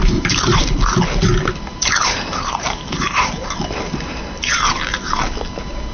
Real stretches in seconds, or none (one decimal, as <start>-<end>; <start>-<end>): 0.6-1.7; 3.3-5.9